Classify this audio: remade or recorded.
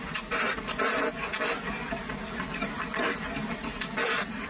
remade